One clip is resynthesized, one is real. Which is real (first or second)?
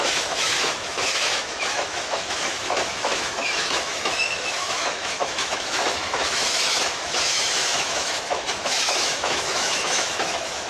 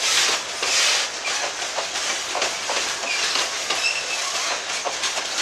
second